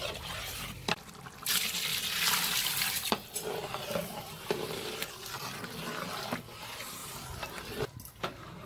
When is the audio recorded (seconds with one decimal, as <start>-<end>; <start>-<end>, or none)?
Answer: 0.0-1.9; 3.0-4.1; 4.9-7.0; 7.5-8.7